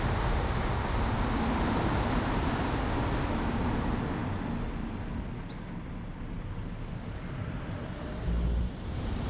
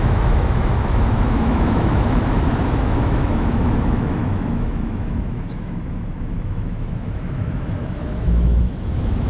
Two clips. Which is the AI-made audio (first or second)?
second